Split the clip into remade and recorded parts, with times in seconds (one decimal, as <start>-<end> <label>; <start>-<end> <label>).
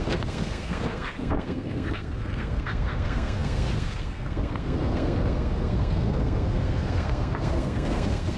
0.0-8.4 remade